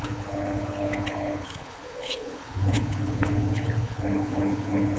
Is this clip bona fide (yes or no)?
no